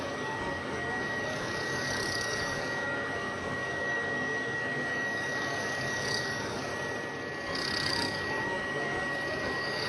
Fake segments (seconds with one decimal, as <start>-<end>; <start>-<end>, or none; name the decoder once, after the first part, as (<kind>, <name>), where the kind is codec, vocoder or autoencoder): 0.0-6.7 (codec, DAC); 7.9-9.9